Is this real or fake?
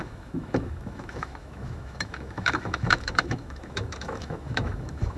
fake